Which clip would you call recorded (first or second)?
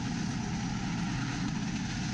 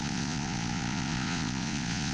first